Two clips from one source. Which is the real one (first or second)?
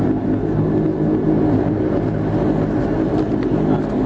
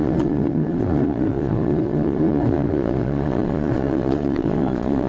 first